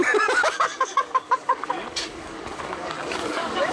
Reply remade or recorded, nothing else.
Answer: remade